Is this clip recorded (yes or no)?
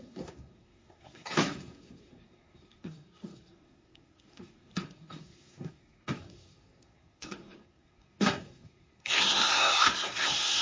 no